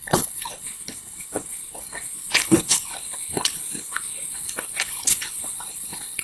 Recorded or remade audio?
remade